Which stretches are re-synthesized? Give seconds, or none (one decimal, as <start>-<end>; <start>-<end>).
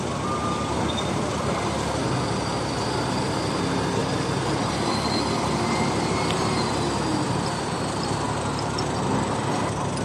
none